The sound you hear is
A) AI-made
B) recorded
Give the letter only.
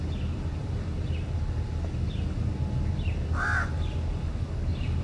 B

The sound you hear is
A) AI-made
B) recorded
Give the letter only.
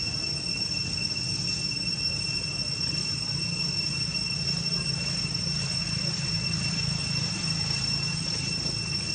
B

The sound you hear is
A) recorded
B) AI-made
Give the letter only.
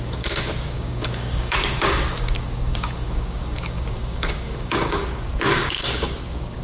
B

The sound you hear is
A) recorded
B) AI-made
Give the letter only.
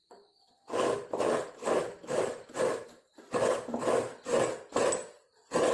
A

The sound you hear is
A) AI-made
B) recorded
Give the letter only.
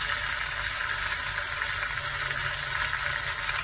B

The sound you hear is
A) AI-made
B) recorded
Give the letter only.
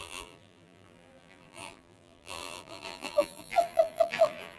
A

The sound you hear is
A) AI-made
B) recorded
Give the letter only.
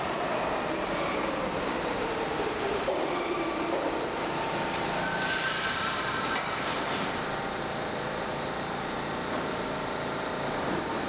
A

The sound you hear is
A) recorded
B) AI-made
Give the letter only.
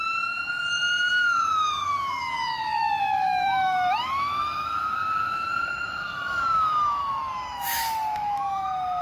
B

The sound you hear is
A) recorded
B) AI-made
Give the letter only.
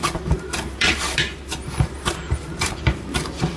B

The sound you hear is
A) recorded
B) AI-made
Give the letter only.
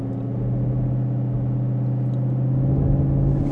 A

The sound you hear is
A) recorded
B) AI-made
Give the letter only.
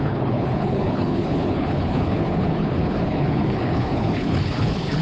B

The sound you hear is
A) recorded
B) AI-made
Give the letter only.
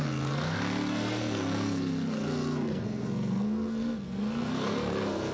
B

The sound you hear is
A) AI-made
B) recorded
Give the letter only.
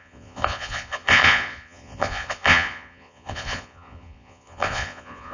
A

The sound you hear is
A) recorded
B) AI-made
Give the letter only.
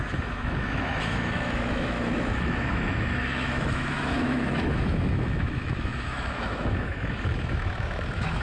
B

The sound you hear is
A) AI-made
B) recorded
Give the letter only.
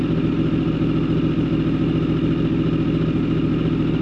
B